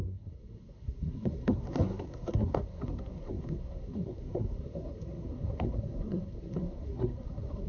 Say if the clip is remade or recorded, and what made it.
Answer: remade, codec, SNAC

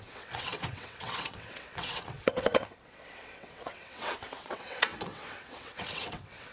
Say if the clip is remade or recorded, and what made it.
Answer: remade, vocoder, WaveNeXt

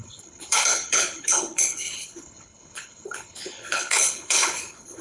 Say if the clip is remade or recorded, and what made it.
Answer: remade, codec, HILCodec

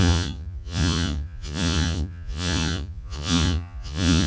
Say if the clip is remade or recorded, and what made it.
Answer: remade, vocoder, Vocos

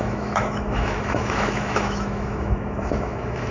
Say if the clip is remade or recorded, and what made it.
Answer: remade, autoencoder, DAC-VAE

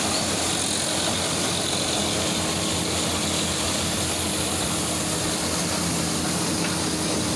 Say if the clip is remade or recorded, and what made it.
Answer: recorded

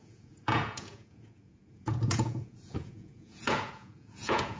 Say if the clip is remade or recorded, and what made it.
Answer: remade, vocoder, Vocos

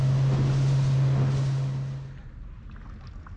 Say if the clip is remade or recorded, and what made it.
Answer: recorded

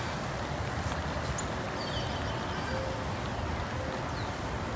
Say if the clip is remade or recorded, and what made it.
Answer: recorded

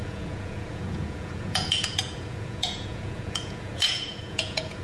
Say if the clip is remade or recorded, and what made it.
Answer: remade, vocoder, Vocos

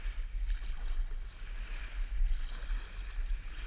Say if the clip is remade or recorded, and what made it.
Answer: recorded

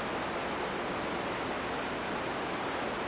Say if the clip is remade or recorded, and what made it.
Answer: recorded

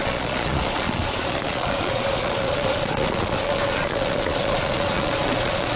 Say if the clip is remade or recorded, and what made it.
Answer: remade, vocoder, Vocos